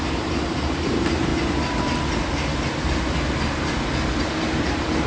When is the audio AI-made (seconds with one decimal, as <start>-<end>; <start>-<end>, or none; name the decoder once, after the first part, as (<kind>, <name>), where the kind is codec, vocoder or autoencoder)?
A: 0.0-1.3 (vocoder, BigVGAN v2); 4.4-5.1